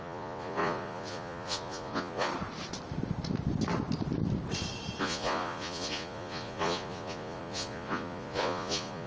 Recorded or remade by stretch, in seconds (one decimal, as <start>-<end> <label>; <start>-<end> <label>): 0.0-2.3 remade; 2.3-5.0 recorded; 5.0-9.1 remade